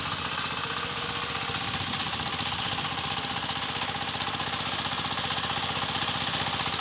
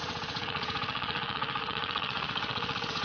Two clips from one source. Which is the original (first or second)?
first